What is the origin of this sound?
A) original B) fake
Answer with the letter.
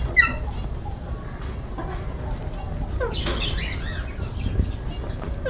A